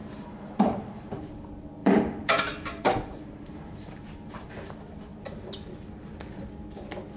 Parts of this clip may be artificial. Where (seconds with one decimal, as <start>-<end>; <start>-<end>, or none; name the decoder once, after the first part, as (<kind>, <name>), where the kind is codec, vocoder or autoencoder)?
0.0-1.2 (vocoder, BigVGAN v2); 1.8-4.5